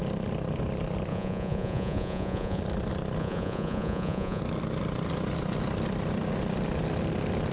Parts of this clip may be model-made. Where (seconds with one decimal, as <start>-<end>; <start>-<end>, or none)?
1.1-2.6; 3.2-4.4